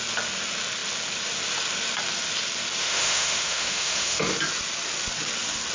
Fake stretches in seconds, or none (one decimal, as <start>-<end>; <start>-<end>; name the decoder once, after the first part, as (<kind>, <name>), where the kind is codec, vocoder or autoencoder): 2.8-4.2 (autoencoder, DAC-VAE)

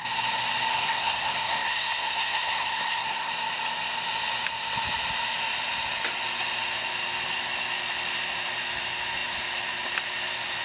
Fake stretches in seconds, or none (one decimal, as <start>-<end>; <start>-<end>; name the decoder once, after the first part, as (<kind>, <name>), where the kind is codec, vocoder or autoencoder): 0.7-3.3 (codec, SNAC)

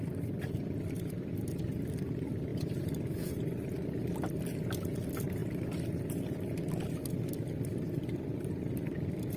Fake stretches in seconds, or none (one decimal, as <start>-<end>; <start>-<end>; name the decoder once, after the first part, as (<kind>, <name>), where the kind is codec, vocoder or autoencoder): none

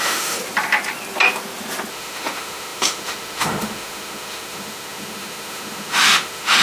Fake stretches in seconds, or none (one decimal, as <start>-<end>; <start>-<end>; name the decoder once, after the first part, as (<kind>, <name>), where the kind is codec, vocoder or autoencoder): 0.0-0.4 (autoencoder, DAC-VAE); 1.9-6.6